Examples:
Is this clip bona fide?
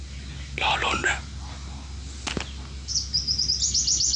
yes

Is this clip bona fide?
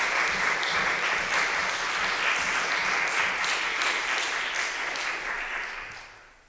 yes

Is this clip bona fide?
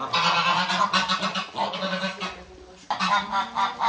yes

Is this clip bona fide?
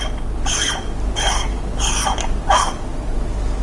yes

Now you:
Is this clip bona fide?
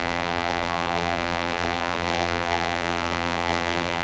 no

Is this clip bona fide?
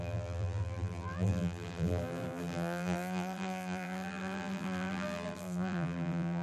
no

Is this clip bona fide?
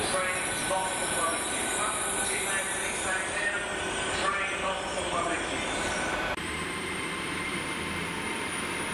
no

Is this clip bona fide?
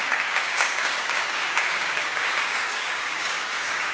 no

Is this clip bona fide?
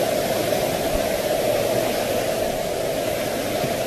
yes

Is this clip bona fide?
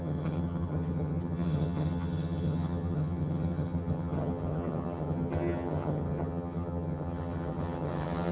no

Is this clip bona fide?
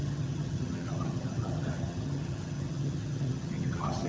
no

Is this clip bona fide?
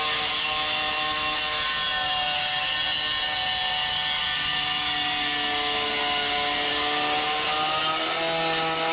yes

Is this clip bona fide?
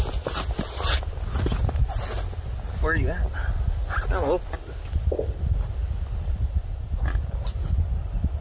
yes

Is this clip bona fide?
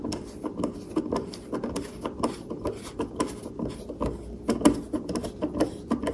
yes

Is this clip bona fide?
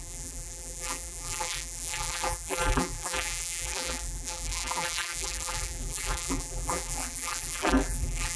no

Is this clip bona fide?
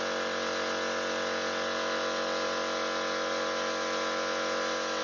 yes